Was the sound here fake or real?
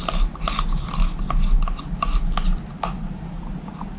real